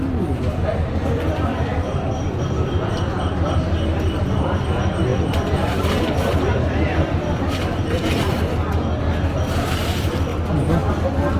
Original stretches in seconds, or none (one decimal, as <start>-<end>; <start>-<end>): 0.0-1.7; 4.6-5.1; 7.8-11.4